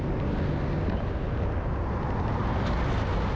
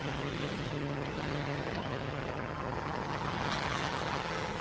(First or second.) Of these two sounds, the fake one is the second